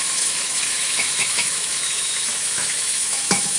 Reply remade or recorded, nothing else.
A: remade